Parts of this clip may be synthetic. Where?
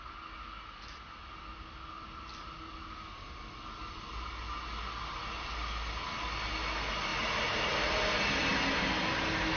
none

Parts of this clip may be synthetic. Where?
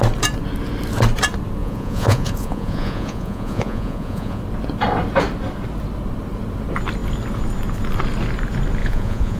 1.6-4.4 (vocoder, Vocos); 8.8-9.4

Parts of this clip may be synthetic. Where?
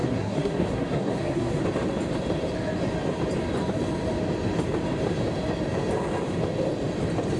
0.0-1.6 (codec, SNAC)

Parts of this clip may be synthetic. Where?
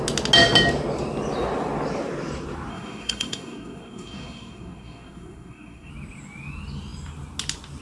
2.7-5.9 (codec, SNAC)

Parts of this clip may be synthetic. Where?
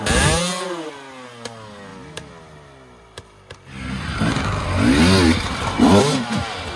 none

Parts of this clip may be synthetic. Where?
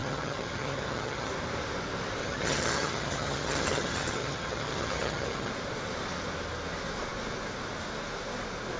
0.0-1.3 (vocoder, HiFi-GAN); 2.2-5.5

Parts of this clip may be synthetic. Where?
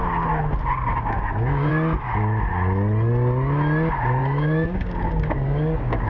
0.9-1.7 (codec, DAC); 4.2-6.1